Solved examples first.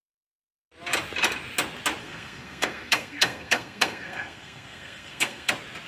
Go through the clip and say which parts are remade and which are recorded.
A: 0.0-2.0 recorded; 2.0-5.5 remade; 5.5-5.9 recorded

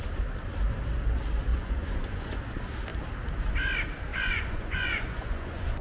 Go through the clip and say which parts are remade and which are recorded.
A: 0.0-1.5 recorded; 1.5-2.4 remade; 2.4-4.1 recorded; 4.1-5.8 remade

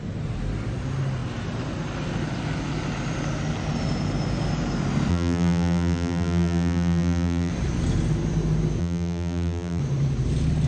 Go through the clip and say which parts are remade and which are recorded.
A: 0.0-5.1 recorded; 5.1-7.5 remade; 7.5-8.8 recorded; 8.8-9.8 remade; 9.8-10.7 recorded